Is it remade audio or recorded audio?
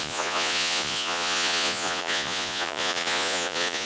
remade